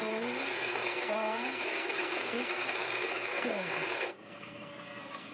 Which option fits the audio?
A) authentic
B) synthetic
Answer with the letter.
B